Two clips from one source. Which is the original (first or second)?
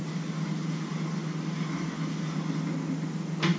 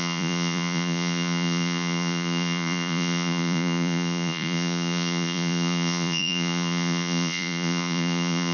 first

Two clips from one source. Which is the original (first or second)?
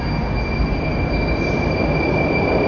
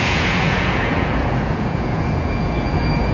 first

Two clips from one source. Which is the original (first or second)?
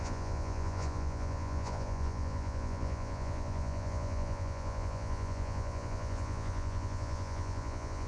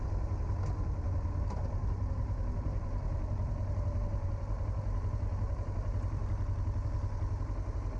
second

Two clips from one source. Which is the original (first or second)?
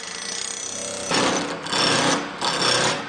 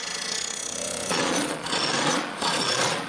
first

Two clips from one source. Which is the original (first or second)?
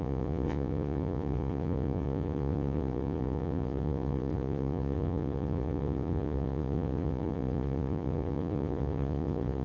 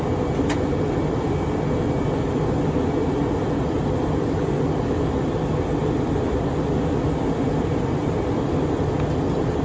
second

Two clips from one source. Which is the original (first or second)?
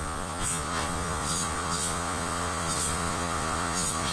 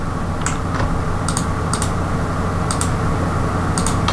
second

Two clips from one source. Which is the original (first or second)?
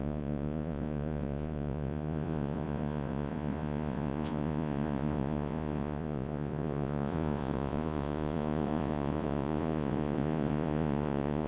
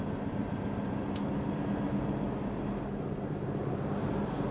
second